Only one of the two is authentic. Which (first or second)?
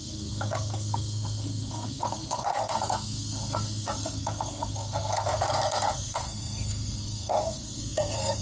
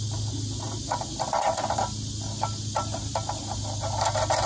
second